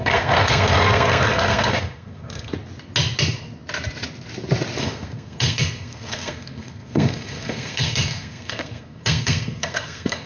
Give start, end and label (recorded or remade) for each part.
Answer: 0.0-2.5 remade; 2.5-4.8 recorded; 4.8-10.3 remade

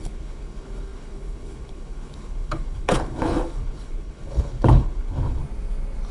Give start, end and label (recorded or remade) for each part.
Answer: 0.0-5.4 remade; 5.4-6.1 recorded

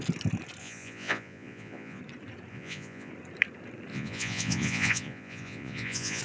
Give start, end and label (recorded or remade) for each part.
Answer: 0.0-0.6 recorded; 0.6-2.0 remade; 2.0-2.5 recorded; 2.5-3.1 remade; 3.1-3.9 recorded; 3.9-6.2 remade

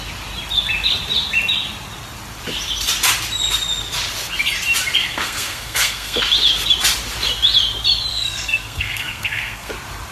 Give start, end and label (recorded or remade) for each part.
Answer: 0.0-5.0 recorded; 5.0-6.2 remade; 6.2-8.1 recorded; 8.1-9.7 remade; 9.7-10.1 recorded